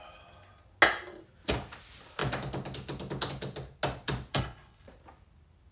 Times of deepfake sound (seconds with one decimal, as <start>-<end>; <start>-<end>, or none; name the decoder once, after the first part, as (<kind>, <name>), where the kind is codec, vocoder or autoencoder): 4.3-4.9 (codec, HILCodec)